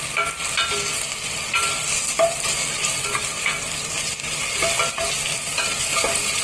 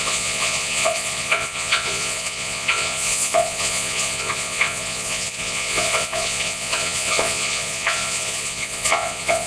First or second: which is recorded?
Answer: first